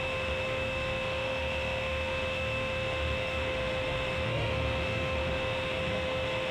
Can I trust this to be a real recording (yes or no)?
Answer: no